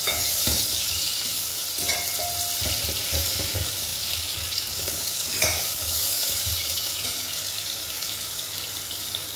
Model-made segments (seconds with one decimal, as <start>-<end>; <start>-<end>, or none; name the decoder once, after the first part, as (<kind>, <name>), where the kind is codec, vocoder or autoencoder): 0.0-1.6 (codec, DAC); 3.1-9.4